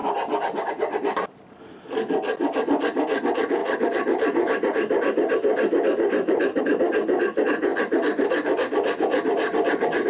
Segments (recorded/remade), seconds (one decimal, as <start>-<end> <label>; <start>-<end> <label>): 0.0-3.6 recorded; 3.6-6.6 remade; 6.6-10.1 recorded